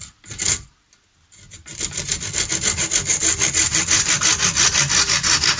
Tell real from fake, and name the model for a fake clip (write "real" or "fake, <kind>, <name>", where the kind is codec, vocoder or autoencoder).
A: real